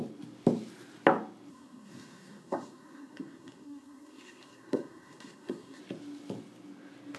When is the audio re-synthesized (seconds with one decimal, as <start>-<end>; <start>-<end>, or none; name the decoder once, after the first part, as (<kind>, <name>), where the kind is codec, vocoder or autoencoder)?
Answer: 1.5-5.8 (codec, SNAC)